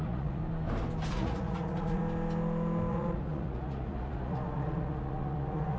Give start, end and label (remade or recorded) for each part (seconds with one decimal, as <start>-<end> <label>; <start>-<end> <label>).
0.0-0.4 remade; 0.4-1.1 recorded; 1.1-2.0 remade; 2.0-2.9 recorded; 2.9-5.8 remade